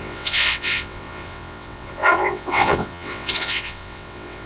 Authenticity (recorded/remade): remade